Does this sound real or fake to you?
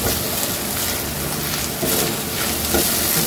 real